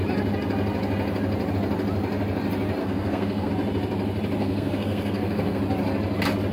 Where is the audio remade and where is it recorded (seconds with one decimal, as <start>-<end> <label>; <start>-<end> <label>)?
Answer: 0.0-2.8 recorded; 2.8-3.5 remade; 3.5-4.4 recorded; 4.4-5.6 remade; 5.6-6.5 recorded